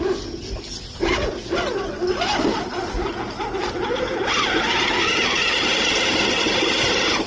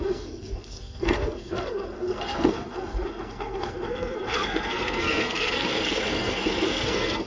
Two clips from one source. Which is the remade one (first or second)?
second